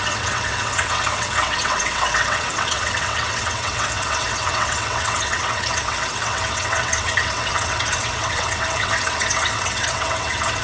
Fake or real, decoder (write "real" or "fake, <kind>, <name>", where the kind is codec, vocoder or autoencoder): fake, vocoder, WaveNeXt